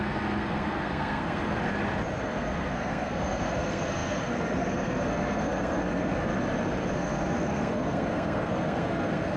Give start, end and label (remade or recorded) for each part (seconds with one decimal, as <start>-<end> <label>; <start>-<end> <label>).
0.0-1.7 remade; 1.7-2.2 recorded; 2.2-6.3 remade; 6.3-6.9 recorded; 6.9-9.4 remade